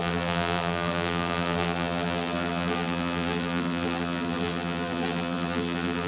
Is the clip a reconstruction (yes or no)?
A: yes